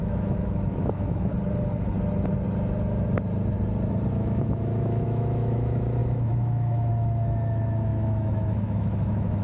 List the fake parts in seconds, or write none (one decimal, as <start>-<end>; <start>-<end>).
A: 0.0-1.3; 4.1-9.4